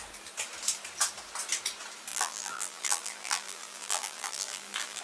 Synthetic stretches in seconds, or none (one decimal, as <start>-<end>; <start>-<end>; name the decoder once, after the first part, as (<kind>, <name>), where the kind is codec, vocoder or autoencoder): 2.1-5.0 (vocoder, BigVGAN v2)